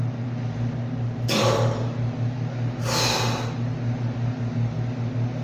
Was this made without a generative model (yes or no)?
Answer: yes